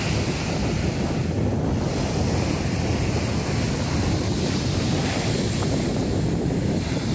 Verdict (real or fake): real